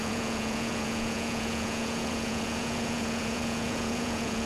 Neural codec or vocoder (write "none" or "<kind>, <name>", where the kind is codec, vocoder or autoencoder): vocoder, Vocos